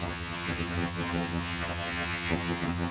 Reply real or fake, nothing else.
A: fake